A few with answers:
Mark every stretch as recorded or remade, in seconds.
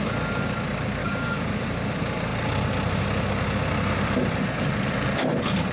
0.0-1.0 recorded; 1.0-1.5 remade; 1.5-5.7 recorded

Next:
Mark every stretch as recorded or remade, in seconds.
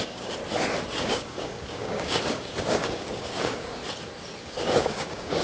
0.0-0.4 remade; 0.4-1.0 recorded; 1.0-3.8 remade; 3.8-4.4 recorded; 4.4-5.4 remade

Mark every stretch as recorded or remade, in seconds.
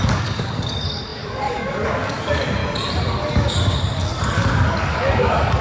0.0-2.6 remade; 2.6-3.1 recorded; 3.1-5.6 remade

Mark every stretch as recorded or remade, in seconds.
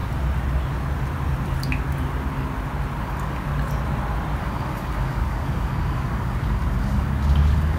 0.0-3.0 recorded; 3.0-3.5 remade; 3.5-4.4 recorded; 4.4-7.8 remade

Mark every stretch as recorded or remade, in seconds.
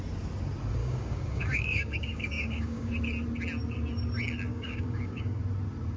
0.0-0.8 recorded; 0.8-2.9 remade; 2.9-4.5 recorded; 4.5-5.4 remade; 5.4-6.0 recorded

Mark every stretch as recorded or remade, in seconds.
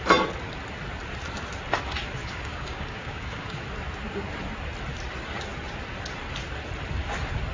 0.0-2.2 recorded; 2.2-3.6 remade; 3.6-7.5 recorded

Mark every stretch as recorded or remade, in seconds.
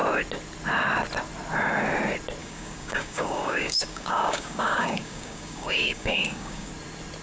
0.0-2.4 recorded; 2.4-6.7 remade; 6.7-7.2 recorded